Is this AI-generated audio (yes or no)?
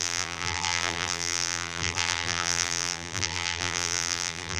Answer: yes